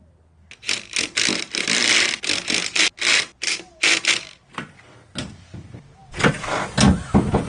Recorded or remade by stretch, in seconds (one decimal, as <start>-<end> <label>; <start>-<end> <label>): 0.0-7.5 recorded